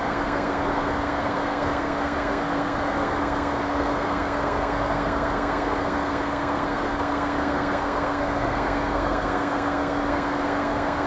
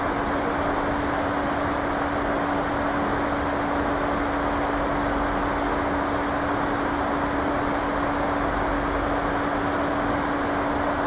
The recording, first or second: second